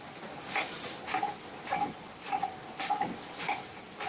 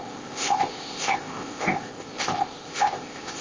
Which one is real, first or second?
first